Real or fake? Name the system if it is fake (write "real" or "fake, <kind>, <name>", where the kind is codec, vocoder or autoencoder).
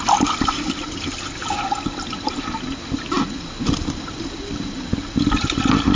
real